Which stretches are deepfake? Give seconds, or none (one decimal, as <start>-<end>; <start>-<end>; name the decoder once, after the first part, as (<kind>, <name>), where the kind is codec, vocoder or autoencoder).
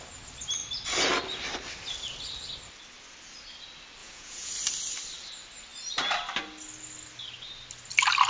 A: 4.0-4.5 (vocoder, Vocos)